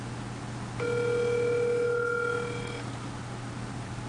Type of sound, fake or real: real